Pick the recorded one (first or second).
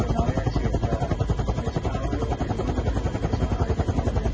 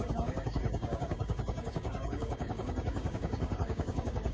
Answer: first